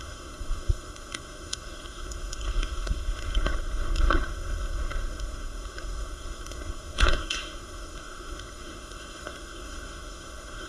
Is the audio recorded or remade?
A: remade